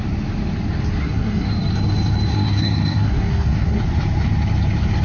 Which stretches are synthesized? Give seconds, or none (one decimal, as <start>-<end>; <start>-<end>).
1.0-1.5; 2.3-3.8